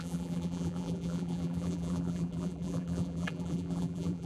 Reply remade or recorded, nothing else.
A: remade